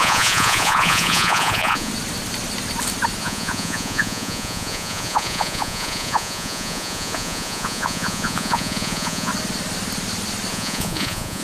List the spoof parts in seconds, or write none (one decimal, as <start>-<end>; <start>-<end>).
0.0-1.9; 3.2-9.3; 10.5-11.4

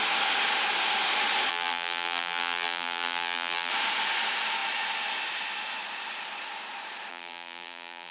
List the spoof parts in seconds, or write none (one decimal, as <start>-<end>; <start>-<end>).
1.5-3.7; 7.1-8.1